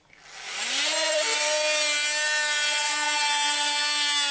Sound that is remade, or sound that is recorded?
recorded